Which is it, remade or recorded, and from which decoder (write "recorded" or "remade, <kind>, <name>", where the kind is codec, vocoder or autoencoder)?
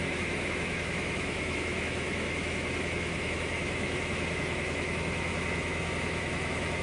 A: remade, autoencoder, DAC-VAE